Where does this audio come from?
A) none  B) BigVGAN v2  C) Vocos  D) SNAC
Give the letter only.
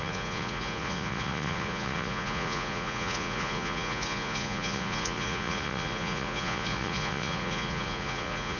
C